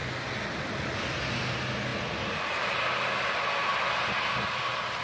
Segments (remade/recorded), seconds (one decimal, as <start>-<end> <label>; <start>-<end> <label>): 0.0-5.0 recorded